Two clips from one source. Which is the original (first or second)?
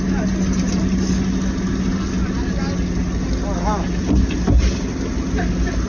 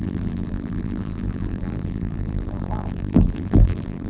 first